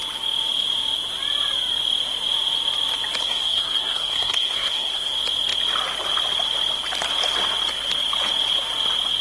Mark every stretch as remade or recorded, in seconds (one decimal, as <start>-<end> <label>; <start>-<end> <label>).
0.0-3.2 recorded; 3.2-5.1 remade; 5.1-9.2 recorded